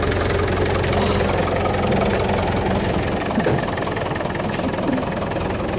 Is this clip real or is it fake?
real